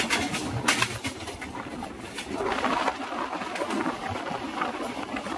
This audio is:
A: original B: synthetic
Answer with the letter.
A